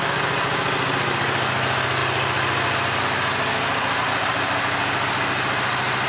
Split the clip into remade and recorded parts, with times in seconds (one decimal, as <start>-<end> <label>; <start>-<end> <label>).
0.0-6.1 recorded